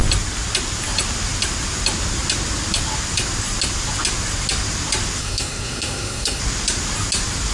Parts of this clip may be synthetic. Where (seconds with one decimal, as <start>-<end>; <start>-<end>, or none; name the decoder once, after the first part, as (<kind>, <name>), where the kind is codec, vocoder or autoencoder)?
5.2-6.4 (codec, SNAC)

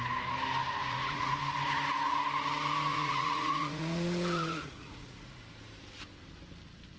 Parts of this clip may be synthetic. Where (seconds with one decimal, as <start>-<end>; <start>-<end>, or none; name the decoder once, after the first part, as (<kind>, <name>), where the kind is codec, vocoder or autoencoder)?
0.8-1.4 (vocoder, Vocos); 2.9-5.4

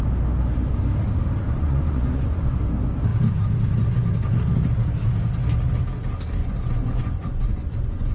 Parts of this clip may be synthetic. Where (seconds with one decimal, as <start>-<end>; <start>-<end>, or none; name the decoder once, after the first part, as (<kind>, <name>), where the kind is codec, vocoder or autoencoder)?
1.5-2.6 (vocoder, Vocos); 6.4-8.1

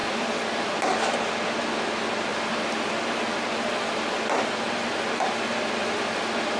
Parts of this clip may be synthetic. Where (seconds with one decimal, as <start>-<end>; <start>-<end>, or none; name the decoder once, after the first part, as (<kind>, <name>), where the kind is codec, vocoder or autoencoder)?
0.0-0.8 (vocoder, BigVGAN v2); 2.3-6.6

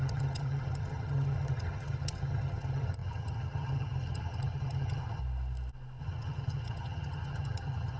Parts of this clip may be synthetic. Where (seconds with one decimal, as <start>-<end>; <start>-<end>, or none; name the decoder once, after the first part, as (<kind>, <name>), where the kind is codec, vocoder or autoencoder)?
0.0-5.2 (vocoder, HiFi-GAN); 6.0-8.0